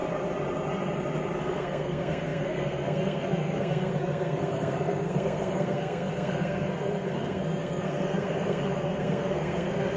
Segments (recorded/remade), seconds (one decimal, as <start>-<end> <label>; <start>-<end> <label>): 0.0-1.4 recorded; 1.4-10.0 remade

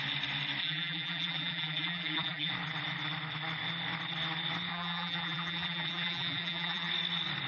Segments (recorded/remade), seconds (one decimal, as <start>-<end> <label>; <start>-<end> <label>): 0.0-0.6 recorded; 0.6-2.5 remade; 2.5-4.7 recorded; 4.7-6.9 remade; 6.9-7.5 recorded

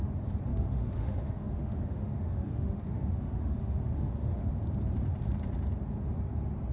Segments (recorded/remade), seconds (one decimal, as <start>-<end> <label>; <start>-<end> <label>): 0.0-0.5 recorded; 0.5-4.5 remade; 4.5-6.7 recorded

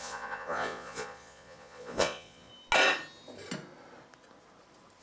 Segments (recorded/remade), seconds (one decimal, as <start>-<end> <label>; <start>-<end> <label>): 0.0-2.5 remade; 2.5-5.0 recorded

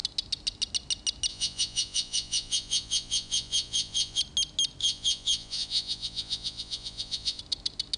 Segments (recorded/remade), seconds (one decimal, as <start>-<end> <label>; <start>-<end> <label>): 0.0-1.3 recorded; 1.3-4.2 remade; 4.2-4.8 recorded; 4.8-7.4 remade; 7.4-8.0 recorded

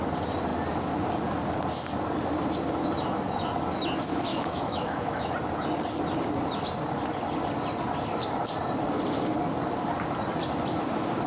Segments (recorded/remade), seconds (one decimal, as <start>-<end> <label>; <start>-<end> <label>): 0.0-4.3 recorded; 4.3-5.3 remade; 5.3-11.3 recorded